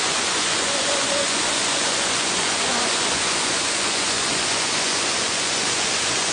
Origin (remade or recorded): remade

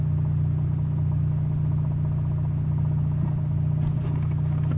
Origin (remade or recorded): recorded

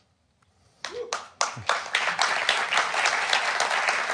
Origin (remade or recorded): recorded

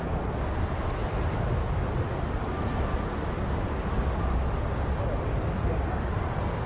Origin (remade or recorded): recorded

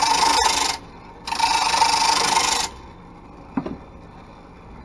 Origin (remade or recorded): recorded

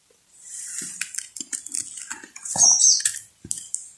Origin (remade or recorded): recorded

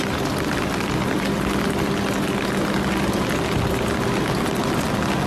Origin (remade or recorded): recorded